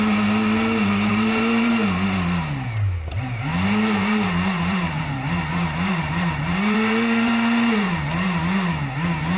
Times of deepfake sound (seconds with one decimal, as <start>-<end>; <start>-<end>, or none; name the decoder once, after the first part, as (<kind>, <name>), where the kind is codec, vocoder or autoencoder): 1.1-1.7 (vocoder, BigVGAN v2); 3.5-8.0